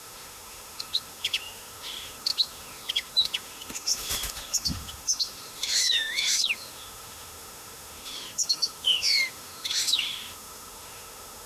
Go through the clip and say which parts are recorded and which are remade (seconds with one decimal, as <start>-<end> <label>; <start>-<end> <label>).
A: 0.0-11.5 remade